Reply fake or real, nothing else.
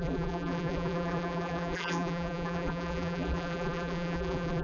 fake